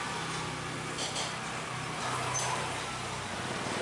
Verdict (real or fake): real